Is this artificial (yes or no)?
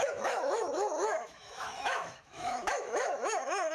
yes